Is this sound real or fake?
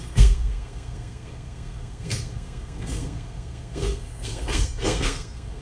fake